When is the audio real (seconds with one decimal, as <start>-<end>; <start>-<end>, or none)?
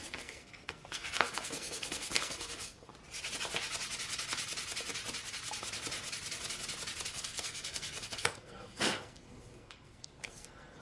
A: 2.9-7.1